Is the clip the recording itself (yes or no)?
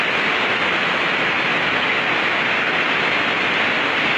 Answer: yes